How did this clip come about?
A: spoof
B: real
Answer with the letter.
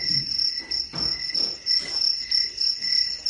B